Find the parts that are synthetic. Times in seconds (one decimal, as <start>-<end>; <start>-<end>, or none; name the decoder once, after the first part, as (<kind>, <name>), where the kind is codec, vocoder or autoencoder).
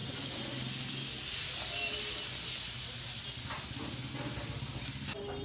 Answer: none